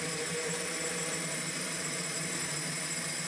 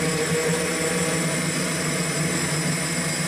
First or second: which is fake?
first